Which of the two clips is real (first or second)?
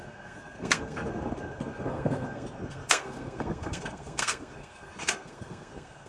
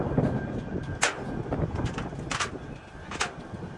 second